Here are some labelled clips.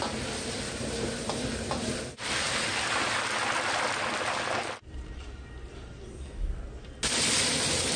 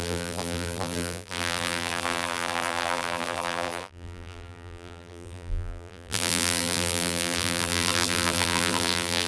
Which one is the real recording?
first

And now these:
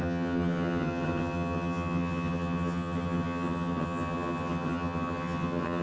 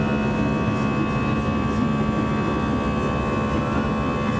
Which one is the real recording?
second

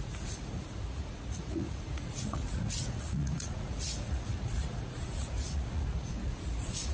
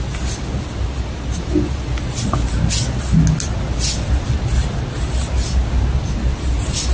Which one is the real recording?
second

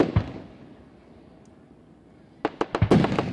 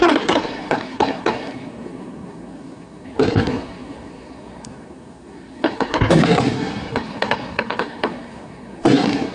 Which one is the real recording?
first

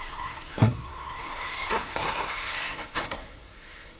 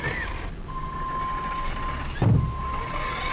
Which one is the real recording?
second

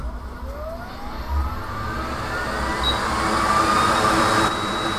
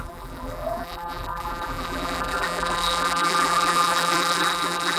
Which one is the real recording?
first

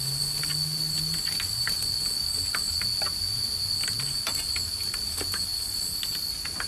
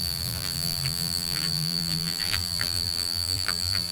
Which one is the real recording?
first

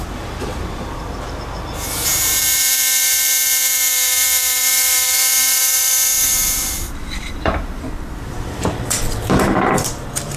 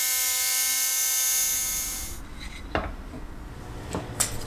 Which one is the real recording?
second